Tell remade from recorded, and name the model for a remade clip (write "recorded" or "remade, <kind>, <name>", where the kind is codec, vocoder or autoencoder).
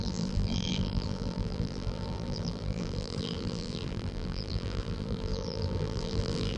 remade, vocoder, BigVGAN v2